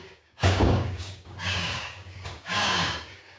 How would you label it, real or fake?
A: fake